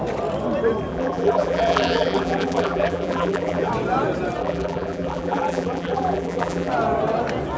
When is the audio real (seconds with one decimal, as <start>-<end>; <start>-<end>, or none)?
0.0-0.9; 3.7-4.4; 6.7-7.6